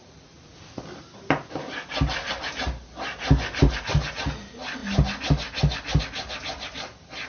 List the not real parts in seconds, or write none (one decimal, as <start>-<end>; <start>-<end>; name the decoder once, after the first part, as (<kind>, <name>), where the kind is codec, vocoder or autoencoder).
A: 0.0-0.8 (vocoder, Vocos)

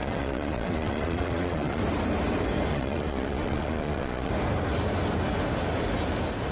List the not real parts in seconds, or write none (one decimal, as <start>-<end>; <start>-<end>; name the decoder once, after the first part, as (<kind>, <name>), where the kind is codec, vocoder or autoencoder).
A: 0.0-1.8 (vocoder, Vocos); 2.7-4.3

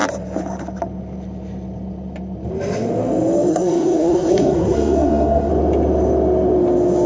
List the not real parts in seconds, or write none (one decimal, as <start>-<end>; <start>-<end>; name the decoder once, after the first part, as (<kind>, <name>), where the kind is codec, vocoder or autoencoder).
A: 3.5-5.5 (codec, SNAC)